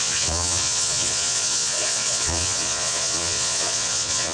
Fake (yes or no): yes